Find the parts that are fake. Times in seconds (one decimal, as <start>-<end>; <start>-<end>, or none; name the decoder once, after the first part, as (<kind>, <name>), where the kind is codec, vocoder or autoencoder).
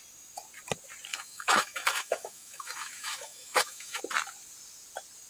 1.1-4.0 (autoencoder, DAC-VAE)